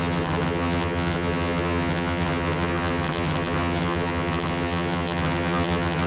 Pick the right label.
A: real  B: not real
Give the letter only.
B